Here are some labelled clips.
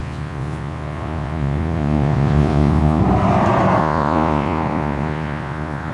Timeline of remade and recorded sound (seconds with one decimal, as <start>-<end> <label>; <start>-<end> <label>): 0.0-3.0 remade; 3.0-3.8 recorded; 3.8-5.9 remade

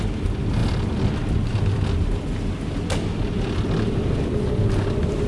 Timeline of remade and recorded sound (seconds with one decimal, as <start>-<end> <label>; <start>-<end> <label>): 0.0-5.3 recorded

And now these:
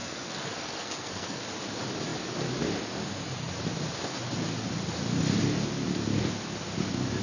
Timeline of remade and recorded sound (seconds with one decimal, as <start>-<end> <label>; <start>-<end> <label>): 0.0-1.4 remade; 1.4-7.2 recorded